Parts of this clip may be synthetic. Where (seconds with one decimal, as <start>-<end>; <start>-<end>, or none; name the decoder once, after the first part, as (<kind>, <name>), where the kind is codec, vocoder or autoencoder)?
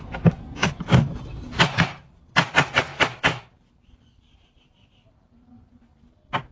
none